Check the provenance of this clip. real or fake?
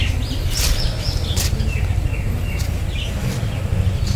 real